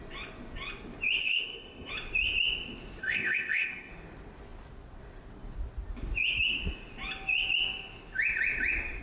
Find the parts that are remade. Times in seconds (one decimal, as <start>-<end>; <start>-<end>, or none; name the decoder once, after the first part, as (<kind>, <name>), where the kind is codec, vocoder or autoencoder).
1.2-1.9 (codec, ZipCodec); 3.0-3.9